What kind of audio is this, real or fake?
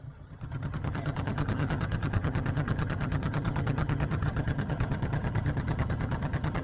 fake